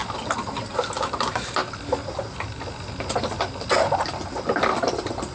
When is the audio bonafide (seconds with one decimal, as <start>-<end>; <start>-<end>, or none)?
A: 1.6-3.7